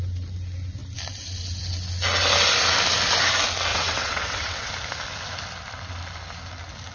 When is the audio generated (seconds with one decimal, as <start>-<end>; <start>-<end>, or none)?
3.7-4.7